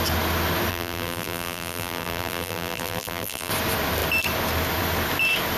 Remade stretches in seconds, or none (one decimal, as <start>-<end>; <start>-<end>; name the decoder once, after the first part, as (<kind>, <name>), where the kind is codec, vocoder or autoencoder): 0.7-3.5 (vocoder, BigVGAN v2)